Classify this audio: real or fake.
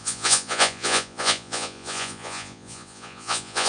fake